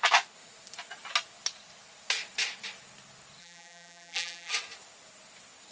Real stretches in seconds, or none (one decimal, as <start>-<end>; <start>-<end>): 0.0-3.4; 4.5-5.7